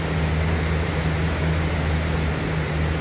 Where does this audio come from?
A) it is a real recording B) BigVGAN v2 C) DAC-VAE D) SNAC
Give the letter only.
A